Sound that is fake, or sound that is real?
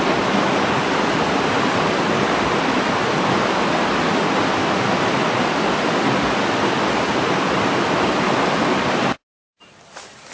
real